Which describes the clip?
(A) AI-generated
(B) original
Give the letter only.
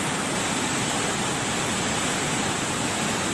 B